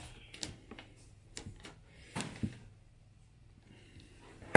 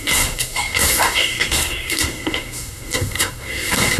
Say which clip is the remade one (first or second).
second